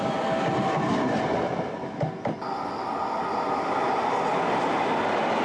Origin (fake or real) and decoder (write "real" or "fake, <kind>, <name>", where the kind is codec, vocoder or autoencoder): real